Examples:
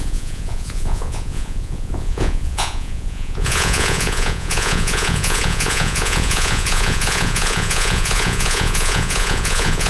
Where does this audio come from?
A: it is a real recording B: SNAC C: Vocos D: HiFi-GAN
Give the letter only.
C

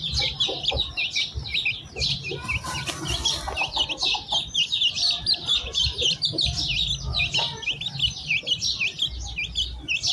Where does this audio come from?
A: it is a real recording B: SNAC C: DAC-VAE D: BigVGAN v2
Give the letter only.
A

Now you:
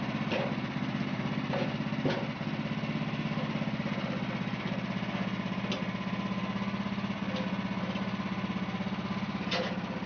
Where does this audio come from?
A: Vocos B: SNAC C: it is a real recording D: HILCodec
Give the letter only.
C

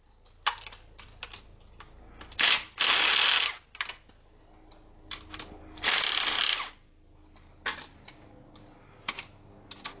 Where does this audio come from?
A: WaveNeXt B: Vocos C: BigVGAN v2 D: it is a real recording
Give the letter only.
D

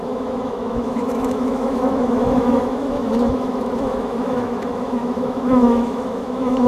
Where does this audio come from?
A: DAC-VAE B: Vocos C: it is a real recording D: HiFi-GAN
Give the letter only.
A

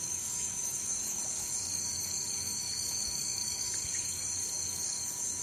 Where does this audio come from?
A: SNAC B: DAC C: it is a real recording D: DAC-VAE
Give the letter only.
B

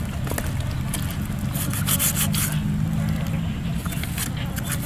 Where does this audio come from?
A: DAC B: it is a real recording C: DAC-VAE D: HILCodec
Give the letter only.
B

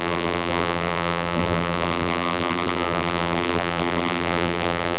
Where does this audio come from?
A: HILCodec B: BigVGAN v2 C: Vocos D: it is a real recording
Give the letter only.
B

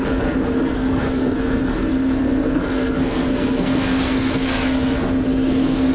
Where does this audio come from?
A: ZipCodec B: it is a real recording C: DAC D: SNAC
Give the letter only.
D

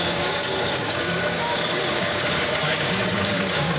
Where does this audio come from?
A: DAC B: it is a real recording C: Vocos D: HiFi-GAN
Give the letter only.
A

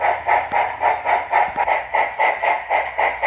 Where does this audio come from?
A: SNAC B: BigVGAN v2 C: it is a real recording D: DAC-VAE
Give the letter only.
C